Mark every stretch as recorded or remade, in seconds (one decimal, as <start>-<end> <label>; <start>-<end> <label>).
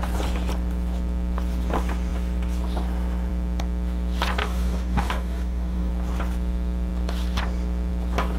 0.0-4.4 recorded; 4.4-5.9 remade; 5.9-8.4 recorded